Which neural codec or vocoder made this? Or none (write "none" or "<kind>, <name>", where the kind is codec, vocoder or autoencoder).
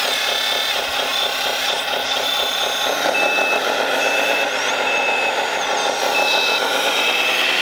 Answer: none